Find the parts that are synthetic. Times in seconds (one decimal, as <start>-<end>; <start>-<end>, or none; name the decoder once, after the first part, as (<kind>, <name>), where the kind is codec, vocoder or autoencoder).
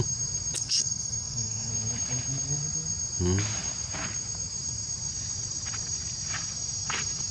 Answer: 0.6-1.7 (codec, SNAC)